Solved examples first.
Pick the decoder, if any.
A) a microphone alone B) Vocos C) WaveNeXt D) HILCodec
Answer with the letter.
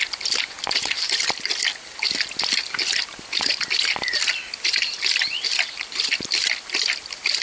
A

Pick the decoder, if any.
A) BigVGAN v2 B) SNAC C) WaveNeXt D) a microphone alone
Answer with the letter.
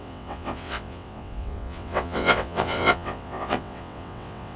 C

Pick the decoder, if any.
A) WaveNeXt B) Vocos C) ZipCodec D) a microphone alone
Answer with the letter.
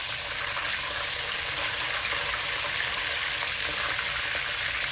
D